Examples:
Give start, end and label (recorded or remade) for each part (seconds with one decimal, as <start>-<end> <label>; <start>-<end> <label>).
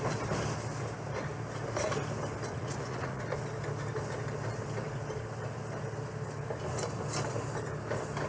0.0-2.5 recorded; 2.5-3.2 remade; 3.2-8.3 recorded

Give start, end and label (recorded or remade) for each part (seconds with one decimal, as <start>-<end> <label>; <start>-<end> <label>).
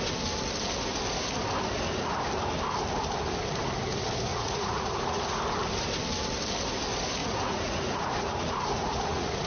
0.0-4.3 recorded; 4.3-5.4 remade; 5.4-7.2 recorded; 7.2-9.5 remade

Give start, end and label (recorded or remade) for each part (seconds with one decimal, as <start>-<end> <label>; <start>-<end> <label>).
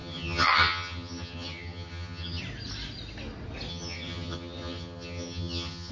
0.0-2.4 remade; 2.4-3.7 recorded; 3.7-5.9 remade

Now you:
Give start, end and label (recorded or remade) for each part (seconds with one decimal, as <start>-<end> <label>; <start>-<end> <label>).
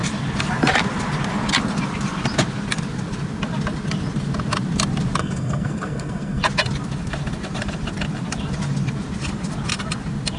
0.0-5.2 recorded; 5.2-6.4 remade; 6.4-10.4 recorded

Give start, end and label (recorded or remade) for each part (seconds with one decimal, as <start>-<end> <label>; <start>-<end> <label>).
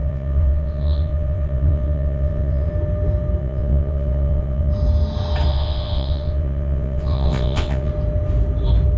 0.0-2.7 remade; 2.7-3.4 recorded; 3.4-4.7 remade; 4.7-5.5 recorded; 5.5-7.9 remade; 7.9-9.0 recorded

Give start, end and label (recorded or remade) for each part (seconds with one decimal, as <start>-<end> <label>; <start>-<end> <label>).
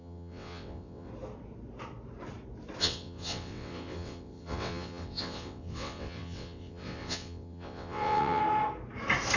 0.0-1.1 remade; 1.1-2.8 recorded; 2.8-8.4 remade; 8.4-9.4 recorded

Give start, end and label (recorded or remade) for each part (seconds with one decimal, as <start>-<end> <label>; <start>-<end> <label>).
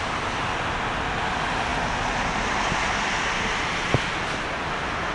0.0-5.1 recorded